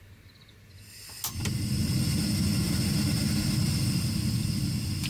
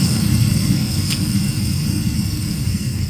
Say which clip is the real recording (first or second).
first